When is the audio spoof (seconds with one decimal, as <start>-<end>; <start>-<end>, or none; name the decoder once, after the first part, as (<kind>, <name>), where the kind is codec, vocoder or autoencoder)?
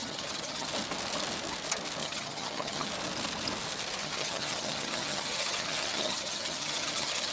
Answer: 0.0-0.7 (vocoder, HiFi-GAN); 2.0-2.9; 4.0-7.3